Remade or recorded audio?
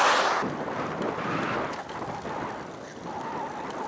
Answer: recorded